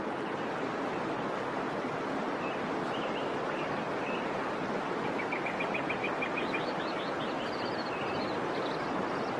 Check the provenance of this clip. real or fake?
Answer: real